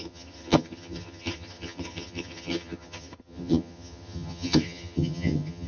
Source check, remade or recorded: remade